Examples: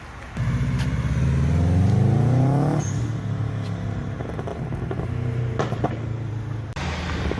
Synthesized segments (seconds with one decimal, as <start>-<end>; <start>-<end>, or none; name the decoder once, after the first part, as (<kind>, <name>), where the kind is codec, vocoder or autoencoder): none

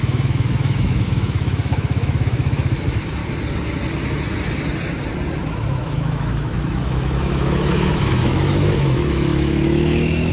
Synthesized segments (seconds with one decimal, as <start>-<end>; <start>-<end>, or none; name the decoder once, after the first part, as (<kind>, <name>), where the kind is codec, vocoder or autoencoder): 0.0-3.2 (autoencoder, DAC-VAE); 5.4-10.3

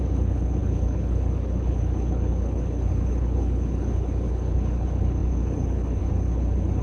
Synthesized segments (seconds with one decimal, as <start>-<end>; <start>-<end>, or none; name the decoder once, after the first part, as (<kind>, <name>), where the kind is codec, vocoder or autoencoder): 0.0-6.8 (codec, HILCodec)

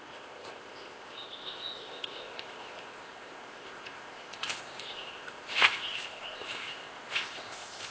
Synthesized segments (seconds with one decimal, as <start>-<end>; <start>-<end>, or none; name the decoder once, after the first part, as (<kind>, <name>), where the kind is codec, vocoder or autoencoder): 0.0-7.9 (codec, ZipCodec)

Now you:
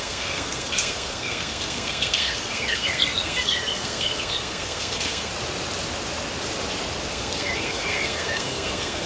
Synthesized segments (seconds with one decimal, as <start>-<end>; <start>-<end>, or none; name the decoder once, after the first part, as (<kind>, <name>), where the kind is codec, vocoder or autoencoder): 0.0-5.3 (codec, SNAC); 7.1-9.1